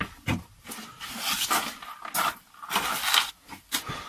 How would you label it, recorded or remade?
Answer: recorded